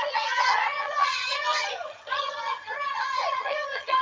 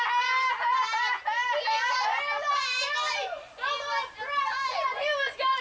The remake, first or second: first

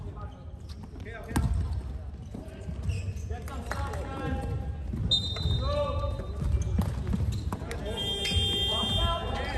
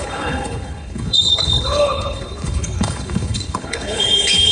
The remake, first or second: second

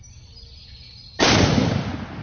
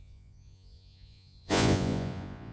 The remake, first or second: second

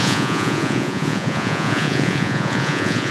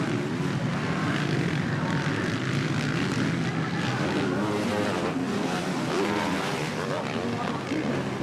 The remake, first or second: first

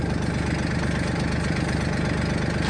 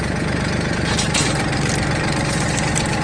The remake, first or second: second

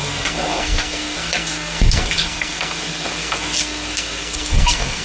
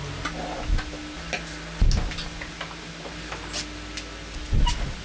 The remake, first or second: first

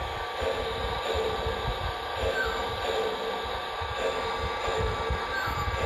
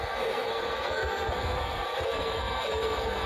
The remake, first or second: second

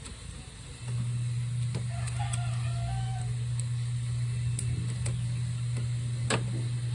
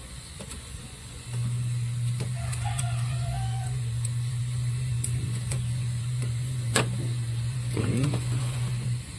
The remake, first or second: second